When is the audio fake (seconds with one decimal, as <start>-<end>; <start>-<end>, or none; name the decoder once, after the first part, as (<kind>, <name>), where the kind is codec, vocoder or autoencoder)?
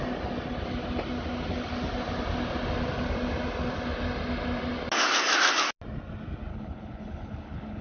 6.5-7.8 (codec, HILCodec)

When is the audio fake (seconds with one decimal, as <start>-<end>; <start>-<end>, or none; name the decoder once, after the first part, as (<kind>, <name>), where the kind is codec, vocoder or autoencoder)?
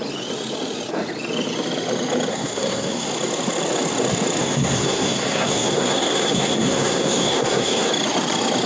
2.3-3.1 (codec, SNAC); 4.4-7.9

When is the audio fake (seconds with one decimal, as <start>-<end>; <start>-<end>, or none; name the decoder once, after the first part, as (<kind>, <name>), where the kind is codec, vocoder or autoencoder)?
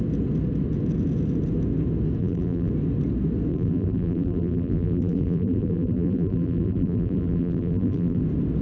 2.2-2.7 (vocoder, BigVGAN v2); 3.5-8.2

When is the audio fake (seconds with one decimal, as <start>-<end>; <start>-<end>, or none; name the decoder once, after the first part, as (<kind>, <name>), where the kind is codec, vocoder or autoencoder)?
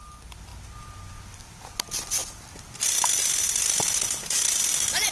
none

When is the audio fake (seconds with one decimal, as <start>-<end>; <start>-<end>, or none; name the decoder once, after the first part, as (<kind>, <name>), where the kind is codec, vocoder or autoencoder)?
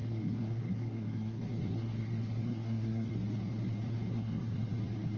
0.0-3.1 (codec, SNAC); 4.1-4.7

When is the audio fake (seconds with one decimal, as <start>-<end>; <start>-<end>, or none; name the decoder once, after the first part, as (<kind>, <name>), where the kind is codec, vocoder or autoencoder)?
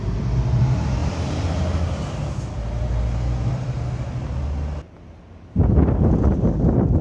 none